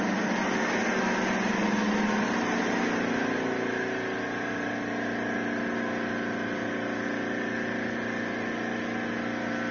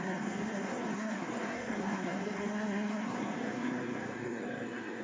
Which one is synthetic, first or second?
second